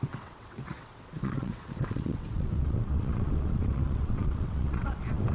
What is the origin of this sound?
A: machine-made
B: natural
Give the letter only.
A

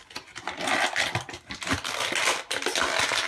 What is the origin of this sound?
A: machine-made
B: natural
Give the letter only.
B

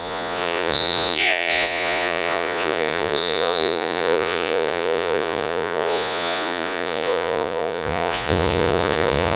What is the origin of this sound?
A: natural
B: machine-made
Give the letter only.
B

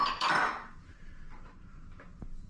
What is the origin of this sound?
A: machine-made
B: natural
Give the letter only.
B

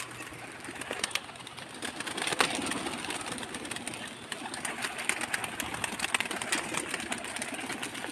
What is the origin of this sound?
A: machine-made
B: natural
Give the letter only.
B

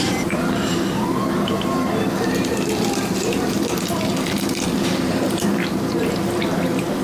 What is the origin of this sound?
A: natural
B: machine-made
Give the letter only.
B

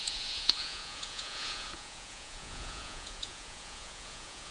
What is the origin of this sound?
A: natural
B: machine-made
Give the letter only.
B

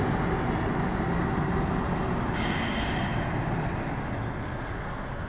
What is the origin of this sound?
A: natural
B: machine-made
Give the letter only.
A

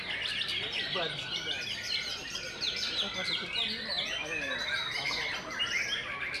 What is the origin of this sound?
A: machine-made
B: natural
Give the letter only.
B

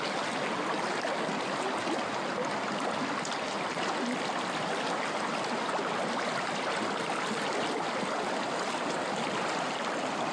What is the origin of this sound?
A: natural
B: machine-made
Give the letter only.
A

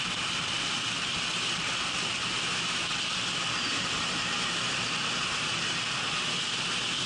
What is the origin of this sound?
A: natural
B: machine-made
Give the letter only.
A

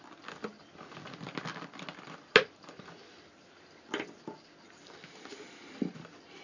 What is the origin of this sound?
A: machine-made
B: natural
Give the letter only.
B